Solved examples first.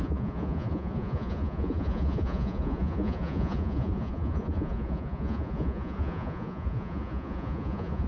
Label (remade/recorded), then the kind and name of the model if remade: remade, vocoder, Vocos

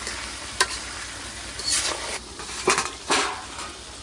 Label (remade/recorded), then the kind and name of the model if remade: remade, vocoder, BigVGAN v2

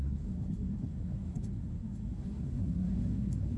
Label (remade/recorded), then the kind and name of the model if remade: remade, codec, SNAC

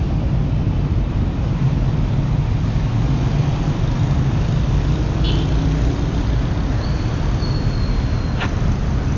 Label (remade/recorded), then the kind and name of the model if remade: recorded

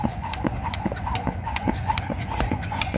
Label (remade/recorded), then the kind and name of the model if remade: remade, vocoder, Vocos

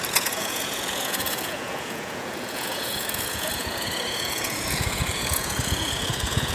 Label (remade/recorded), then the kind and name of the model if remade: remade, vocoder, Vocos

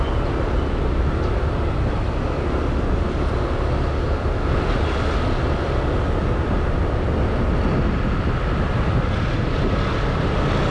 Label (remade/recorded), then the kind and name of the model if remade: recorded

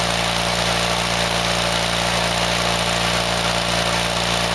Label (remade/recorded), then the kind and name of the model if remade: recorded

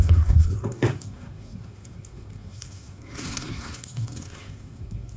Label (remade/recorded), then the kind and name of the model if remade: remade, codec, SNAC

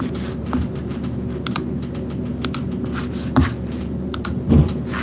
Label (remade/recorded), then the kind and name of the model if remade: recorded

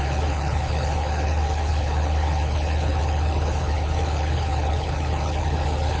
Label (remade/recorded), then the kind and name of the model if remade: remade, codec, HILCodec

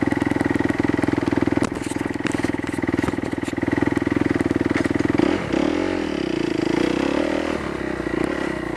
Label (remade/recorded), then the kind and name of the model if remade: recorded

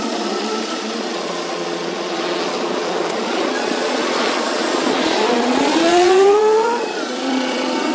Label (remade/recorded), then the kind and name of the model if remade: remade, vocoder, Vocos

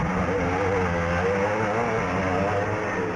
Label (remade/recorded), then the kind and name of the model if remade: recorded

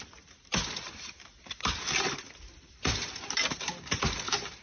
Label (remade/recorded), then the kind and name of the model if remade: recorded